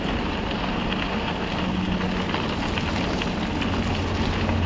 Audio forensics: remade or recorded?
recorded